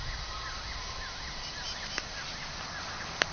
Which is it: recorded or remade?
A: recorded